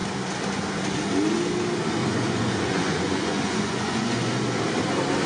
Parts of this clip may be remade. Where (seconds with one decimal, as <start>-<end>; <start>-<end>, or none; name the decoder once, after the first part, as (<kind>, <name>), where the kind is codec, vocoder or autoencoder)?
2.0-4.3 (vocoder, Vocos)